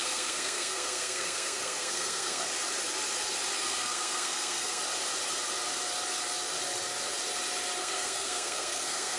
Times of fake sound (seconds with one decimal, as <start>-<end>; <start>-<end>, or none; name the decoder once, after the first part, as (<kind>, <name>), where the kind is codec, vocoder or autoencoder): 0.0-2.4 (codec, SNAC); 3.6-4.8; 7.8-9.2